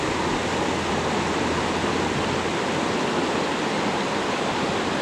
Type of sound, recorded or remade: recorded